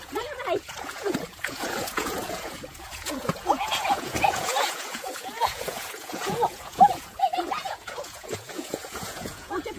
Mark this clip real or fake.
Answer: fake